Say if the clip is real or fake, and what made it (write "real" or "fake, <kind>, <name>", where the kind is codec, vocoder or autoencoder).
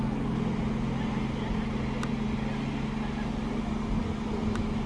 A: real